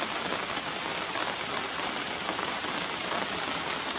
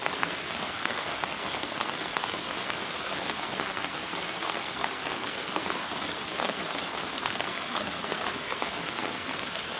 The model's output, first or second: second